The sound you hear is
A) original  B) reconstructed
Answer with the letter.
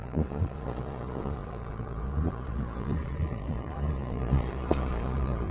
B